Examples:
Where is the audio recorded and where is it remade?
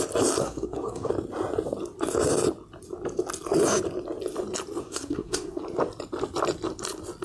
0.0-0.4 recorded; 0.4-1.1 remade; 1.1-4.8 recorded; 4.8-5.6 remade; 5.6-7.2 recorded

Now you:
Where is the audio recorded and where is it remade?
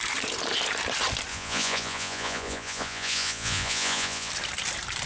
0.0-1.3 recorded; 1.3-4.3 remade; 4.3-5.1 recorded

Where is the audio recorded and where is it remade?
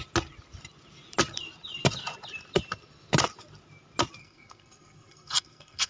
0.0-4.2 recorded; 4.2-5.9 remade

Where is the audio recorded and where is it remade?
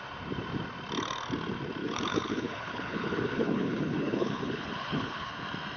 0.0-1.8 recorded; 1.8-5.3 remade; 5.3-5.8 recorded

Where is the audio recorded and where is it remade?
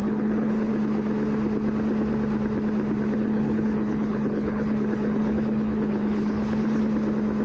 0.0-0.7 remade; 0.7-3.2 recorded; 3.2-6.8 remade; 6.8-7.4 recorded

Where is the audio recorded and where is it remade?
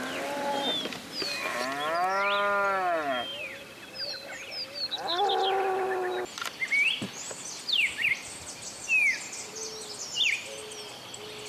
0.0-11.5 recorded